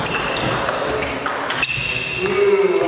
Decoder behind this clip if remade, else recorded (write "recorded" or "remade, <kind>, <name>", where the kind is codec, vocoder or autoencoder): recorded